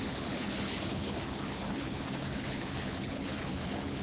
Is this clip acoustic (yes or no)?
no